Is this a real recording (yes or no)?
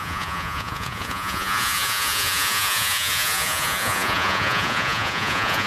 no